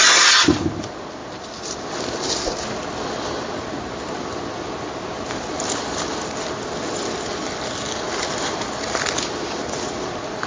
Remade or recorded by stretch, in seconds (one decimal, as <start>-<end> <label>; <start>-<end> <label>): 0.0-10.5 recorded